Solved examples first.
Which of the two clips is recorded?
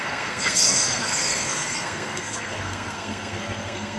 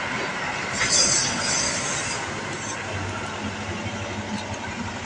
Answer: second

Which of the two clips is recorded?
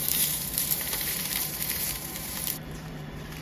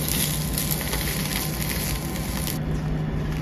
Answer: second